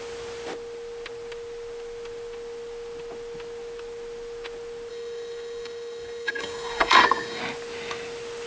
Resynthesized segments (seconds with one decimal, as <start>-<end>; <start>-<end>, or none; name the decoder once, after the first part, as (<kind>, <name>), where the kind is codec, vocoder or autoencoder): 4.9-7.4 (codec, DAC)